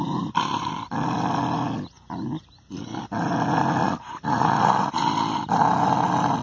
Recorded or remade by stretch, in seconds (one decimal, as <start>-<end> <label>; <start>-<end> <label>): 0.0-3.8 recorded; 3.8-4.9 remade; 4.9-6.4 recorded